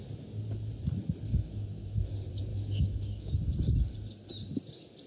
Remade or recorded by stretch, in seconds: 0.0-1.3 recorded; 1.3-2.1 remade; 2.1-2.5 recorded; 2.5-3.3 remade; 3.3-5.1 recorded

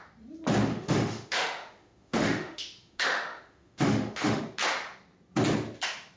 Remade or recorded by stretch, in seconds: 0.0-0.7 recorded; 0.7-4.4 remade; 4.4-6.2 recorded

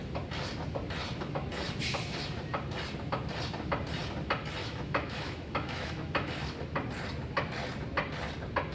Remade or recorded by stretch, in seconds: 0.0-4.6 recorded; 4.6-6.3 remade; 6.3-8.7 recorded

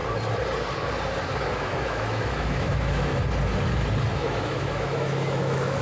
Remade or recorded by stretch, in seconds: 0.0-1.5 recorded; 1.5-3.1 remade; 3.1-4.1 recorded; 4.1-5.8 remade